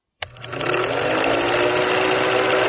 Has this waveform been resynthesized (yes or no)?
no